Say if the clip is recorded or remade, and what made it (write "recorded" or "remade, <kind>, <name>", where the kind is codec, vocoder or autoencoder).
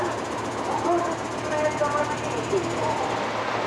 recorded